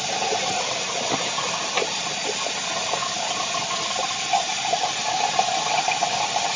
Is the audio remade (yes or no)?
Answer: no